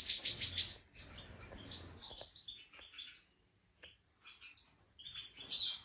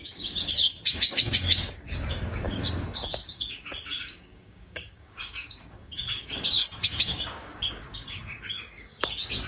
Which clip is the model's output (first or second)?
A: second